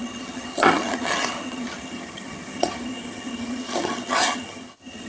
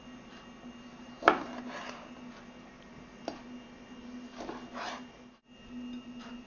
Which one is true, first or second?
second